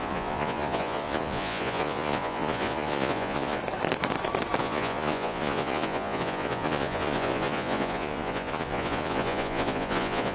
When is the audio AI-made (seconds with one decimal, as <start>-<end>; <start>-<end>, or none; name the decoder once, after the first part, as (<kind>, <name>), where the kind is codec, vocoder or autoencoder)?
0.0-3.6 (vocoder, Vocos); 4.6-10.3